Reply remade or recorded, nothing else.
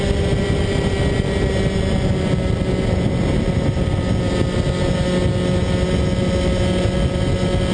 recorded